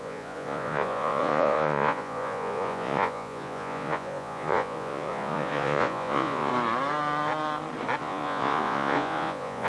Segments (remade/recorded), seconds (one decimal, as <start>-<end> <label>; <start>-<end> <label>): 0.0-6.5 remade; 6.5-8.0 recorded; 8.0-9.7 remade